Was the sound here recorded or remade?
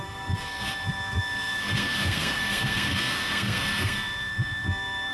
remade